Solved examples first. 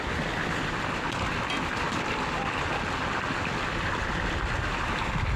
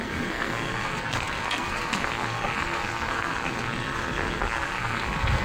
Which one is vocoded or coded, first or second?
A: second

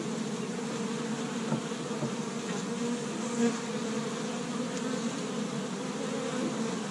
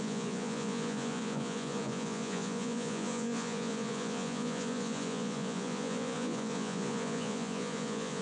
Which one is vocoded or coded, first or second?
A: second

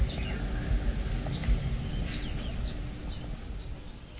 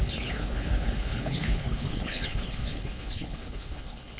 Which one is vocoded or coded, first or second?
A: second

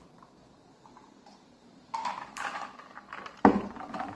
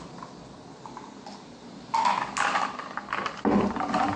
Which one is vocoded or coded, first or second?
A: first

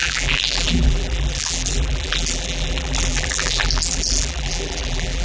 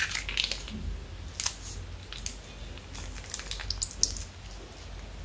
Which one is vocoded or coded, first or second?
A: first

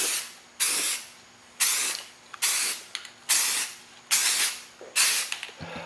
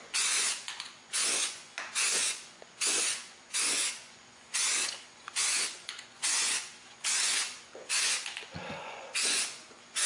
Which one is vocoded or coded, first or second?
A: second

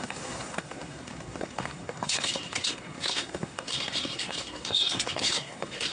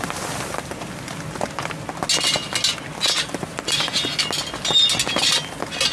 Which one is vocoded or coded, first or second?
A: first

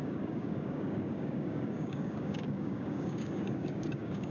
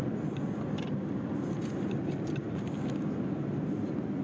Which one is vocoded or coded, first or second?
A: first